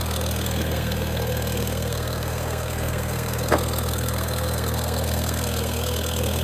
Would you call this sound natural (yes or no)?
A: no